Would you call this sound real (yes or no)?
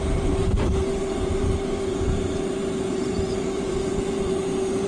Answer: no